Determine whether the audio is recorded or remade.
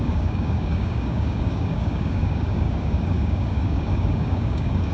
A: remade